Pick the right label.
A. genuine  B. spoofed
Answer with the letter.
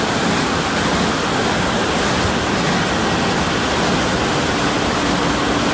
A